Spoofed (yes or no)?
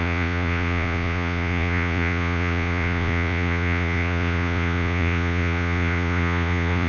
yes